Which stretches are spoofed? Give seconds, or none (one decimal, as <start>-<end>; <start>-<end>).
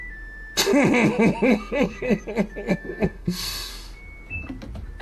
1.5-2.2; 2.7-3.7